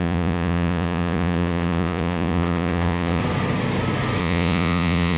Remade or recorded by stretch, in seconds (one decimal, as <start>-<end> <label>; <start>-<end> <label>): 0.0-3.2 remade; 3.2-4.2 recorded; 4.2-5.2 remade